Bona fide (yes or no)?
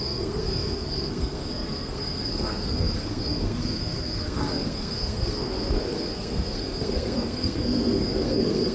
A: no